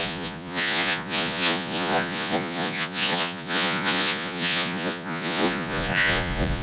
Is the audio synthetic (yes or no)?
yes